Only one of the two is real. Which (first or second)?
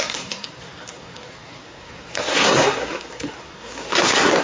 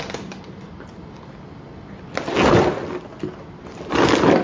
second